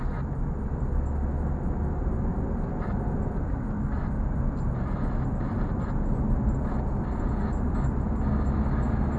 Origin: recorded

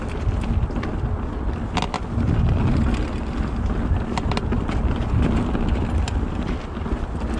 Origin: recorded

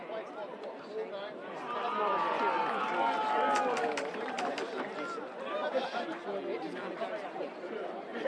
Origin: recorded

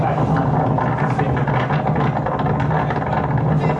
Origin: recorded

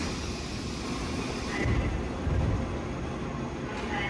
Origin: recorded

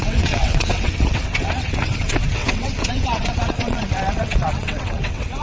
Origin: remade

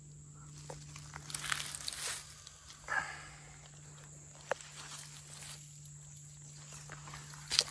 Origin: recorded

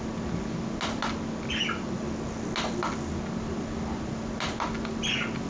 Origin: recorded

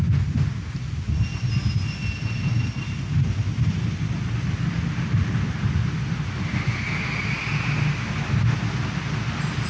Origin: recorded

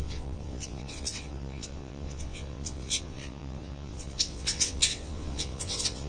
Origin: remade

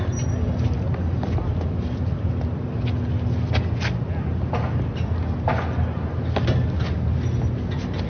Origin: recorded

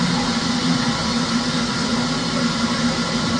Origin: recorded